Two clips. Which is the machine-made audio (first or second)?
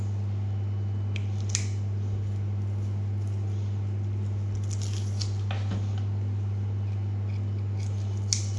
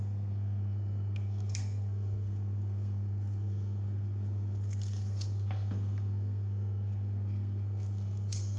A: second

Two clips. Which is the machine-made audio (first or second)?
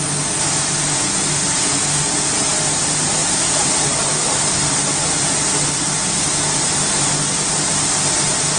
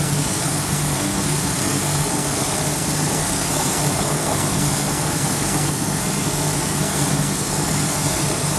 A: second